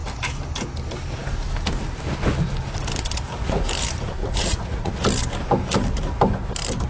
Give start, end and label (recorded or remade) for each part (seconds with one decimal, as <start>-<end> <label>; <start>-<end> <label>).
0.0-4.2 recorded; 4.2-4.9 remade; 4.9-6.9 recorded